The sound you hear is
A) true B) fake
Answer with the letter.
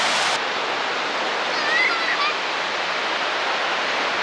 A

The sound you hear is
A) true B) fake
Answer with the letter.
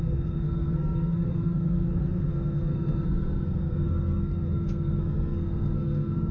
B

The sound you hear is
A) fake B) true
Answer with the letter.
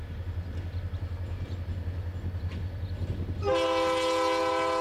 B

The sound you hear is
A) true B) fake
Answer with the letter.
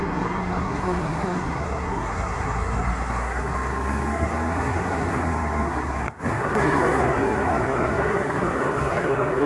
B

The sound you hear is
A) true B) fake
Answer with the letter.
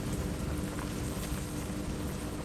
A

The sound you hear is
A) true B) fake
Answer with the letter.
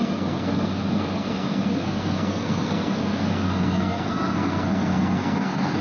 B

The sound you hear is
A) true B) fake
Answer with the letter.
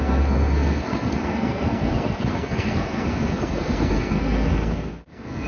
B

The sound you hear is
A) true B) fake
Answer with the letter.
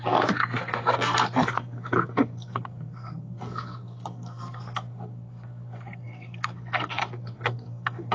B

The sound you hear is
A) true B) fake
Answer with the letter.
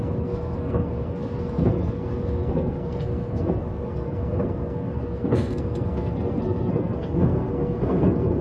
B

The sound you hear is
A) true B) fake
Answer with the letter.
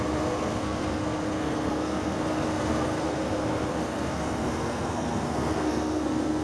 B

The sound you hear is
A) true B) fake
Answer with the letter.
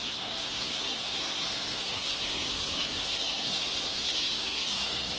B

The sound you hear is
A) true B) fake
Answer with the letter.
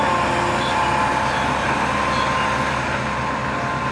A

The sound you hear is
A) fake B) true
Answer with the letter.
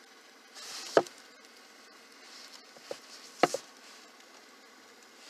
B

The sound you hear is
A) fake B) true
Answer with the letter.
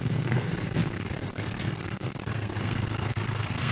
A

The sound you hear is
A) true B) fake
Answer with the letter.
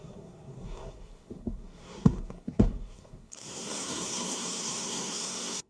B